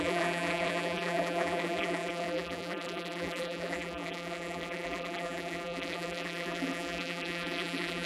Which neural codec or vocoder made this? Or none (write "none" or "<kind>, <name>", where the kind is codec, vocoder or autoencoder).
vocoder, BigVGAN v2